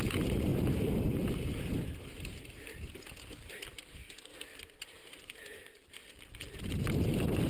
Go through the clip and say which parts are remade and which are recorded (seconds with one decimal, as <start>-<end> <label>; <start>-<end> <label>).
0.0-0.5 recorded; 0.5-3.1 remade; 3.1-5.4 recorded; 5.4-5.9 remade; 5.9-7.5 recorded